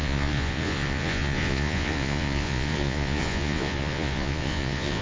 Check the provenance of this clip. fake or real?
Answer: fake